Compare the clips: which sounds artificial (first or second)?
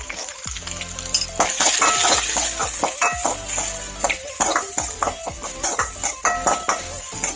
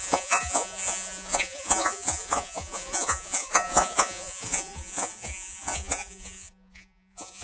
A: second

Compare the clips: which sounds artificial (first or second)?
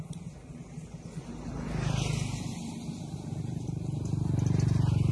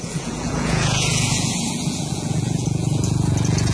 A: second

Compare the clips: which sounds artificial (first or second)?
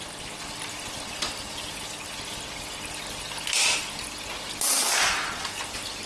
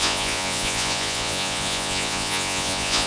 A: second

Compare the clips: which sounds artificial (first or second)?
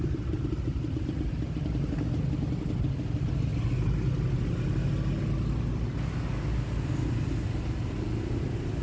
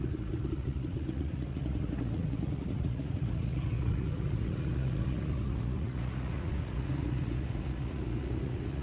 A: second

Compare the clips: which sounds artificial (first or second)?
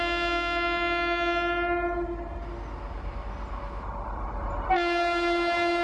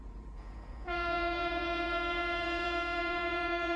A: second